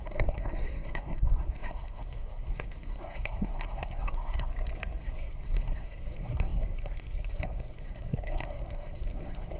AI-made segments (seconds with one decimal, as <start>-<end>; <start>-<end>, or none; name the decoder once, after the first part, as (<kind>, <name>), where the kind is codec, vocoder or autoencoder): 0.0-4.5 (codec, SNAC); 5.0-9.6